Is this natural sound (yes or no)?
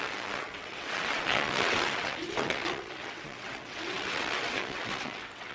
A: no